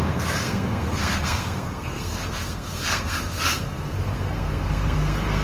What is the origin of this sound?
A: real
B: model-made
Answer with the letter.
B